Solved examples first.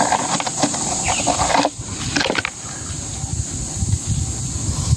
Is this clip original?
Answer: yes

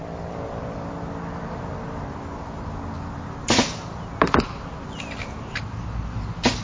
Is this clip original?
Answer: yes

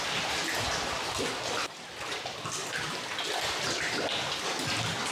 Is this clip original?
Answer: yes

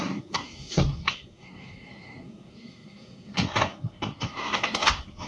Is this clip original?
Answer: no